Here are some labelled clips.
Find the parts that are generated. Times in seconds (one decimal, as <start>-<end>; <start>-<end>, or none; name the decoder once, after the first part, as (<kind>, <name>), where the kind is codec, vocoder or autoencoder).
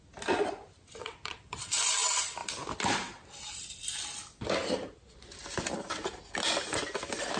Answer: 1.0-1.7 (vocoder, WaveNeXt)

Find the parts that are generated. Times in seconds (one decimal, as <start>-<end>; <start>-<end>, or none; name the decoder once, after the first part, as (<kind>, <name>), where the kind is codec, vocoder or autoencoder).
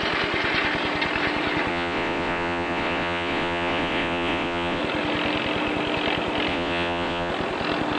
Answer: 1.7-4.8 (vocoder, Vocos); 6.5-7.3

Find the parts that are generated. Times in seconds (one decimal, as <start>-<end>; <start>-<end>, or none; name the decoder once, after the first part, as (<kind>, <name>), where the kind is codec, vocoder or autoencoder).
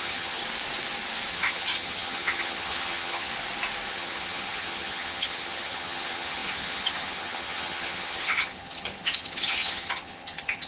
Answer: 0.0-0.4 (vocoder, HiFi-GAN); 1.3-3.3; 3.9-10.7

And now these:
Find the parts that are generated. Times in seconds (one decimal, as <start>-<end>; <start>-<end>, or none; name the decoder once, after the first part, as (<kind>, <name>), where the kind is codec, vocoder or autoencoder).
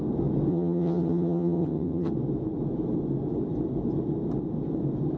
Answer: 0.5-2.1 (vocoder, HiFi-GAN)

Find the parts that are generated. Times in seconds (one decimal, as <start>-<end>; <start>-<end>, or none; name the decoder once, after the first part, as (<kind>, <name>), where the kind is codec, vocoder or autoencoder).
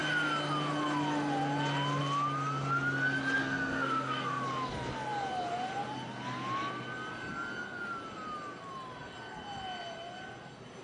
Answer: 3.4-4.4 (codec, SNAC)